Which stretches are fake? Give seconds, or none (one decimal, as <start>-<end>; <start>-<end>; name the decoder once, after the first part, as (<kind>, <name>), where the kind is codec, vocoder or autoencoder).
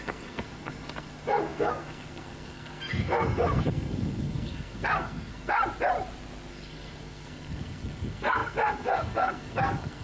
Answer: 0.0-5.6 (codec, SNAC); 6.5-10.0